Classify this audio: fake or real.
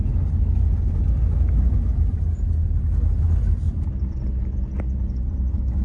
real